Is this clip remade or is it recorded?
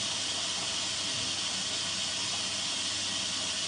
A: recorded